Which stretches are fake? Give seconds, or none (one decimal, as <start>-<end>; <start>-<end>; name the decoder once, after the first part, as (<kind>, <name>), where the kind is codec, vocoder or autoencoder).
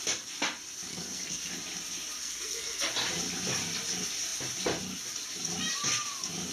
0.9-1.5 (codec, SNAC); 2.2-2.9